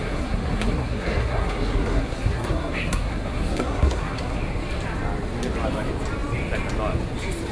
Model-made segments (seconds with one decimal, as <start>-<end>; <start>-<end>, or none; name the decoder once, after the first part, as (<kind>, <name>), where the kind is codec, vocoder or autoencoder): 0.0-4.4 (codec, SNAC)